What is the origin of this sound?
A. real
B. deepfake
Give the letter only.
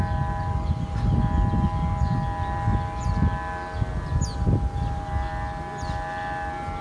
A